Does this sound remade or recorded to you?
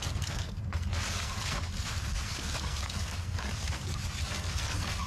remade